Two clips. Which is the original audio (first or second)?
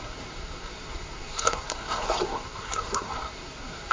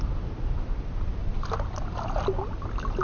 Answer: second